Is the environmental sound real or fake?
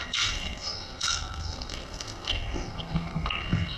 fake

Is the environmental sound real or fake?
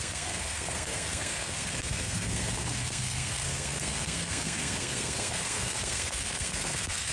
fake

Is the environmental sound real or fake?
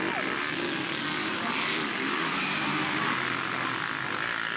real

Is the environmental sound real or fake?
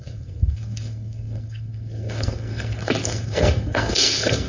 fake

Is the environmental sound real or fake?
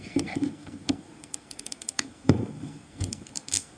fake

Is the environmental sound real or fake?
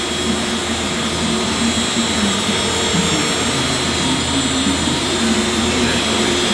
real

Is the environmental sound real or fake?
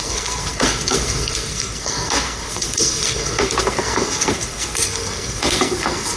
fake